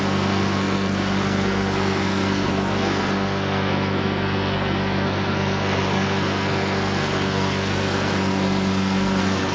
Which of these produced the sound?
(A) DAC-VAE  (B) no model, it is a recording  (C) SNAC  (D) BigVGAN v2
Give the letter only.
C